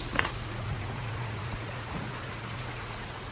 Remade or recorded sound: remade